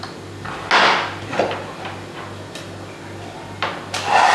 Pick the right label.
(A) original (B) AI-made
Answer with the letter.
A